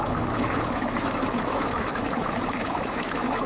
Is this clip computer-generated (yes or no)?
yes